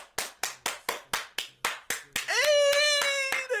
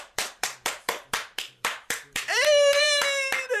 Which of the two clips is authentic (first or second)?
first